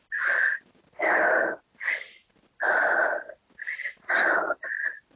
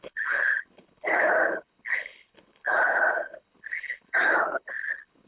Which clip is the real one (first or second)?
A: first